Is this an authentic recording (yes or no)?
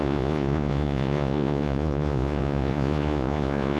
no